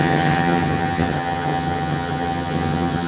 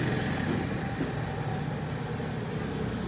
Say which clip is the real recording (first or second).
second